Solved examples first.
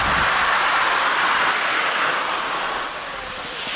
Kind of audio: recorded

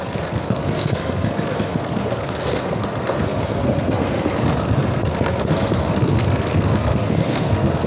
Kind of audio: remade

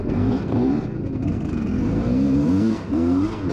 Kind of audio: remade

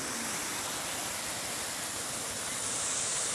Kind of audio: recorded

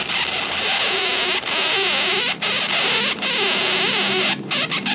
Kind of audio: recorded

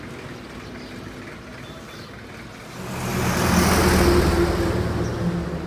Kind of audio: recorded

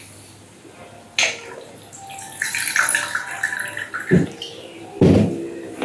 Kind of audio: recorded